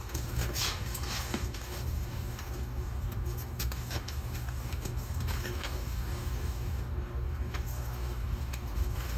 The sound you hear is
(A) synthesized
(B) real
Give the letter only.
A